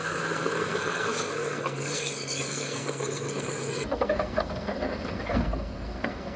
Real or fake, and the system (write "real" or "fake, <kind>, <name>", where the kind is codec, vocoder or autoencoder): fake, codec, SNAC